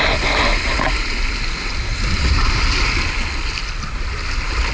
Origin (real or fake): real